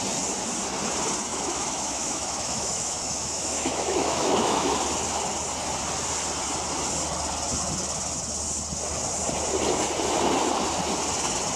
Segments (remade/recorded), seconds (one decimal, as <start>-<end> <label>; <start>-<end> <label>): 0.0-1.3 recorded; 1.3-4.7 remade; 4.7-11.6 recorded